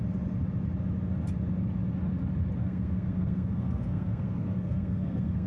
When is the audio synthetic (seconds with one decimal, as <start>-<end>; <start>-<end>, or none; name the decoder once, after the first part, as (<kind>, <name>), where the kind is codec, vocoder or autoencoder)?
2.6-5.5 (codec, SNAC)